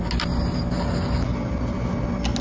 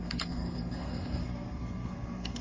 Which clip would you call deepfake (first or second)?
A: second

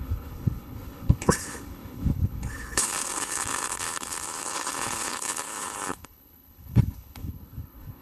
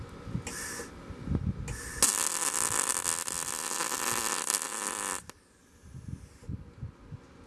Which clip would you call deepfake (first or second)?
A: first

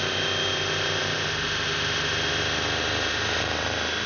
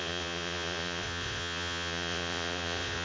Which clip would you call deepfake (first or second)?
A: second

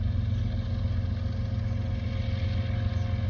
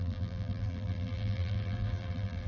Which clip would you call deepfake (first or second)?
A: second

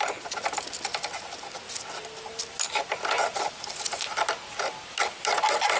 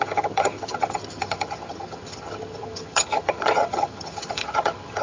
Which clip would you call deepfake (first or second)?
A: second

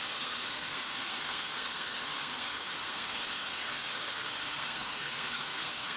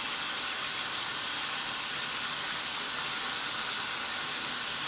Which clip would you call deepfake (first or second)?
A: first